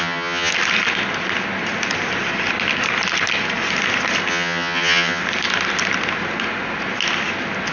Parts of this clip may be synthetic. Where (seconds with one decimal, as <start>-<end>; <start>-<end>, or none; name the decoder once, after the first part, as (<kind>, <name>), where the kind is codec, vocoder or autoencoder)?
0.0-0.5 (vocoder, HiFi-GAN); 4.3-5.2